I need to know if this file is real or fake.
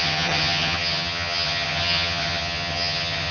fake